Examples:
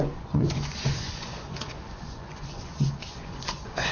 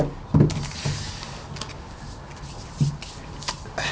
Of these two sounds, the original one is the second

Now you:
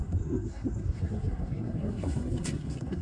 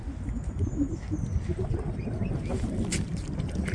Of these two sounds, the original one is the second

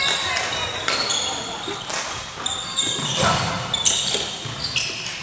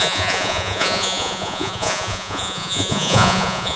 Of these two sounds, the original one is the first